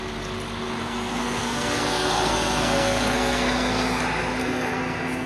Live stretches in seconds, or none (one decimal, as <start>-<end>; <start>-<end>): 0.0-0.8; 4.0-4.4